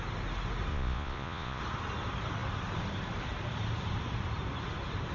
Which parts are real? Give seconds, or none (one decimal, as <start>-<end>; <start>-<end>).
0.0-0.7; 1.6-5.1